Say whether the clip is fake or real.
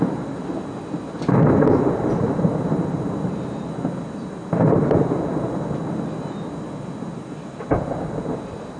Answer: real